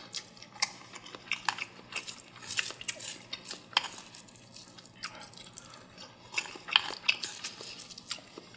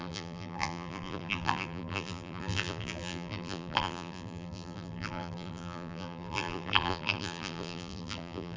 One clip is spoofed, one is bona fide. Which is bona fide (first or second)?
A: first